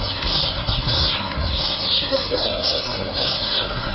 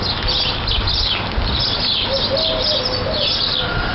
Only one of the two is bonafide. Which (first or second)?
second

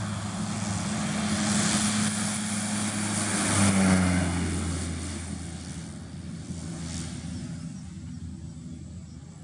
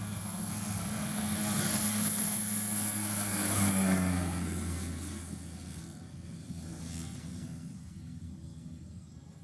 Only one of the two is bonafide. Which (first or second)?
first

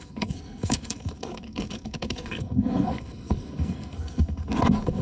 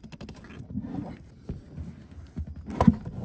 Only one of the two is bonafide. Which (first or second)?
second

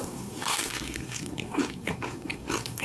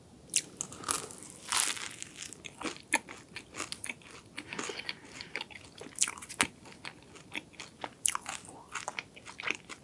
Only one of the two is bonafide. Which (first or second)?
second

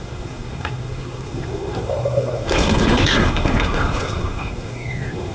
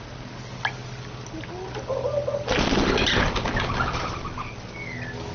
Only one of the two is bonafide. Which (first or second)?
second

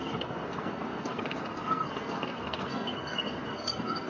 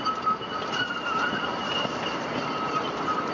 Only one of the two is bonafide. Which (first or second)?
second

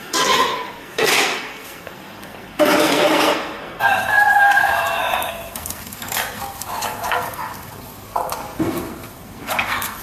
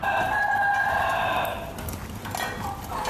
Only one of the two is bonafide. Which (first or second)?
second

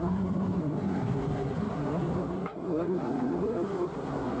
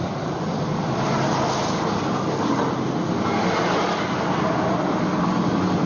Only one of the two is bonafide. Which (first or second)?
second